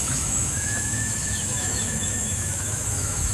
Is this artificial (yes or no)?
yes